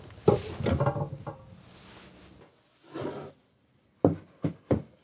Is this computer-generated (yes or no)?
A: no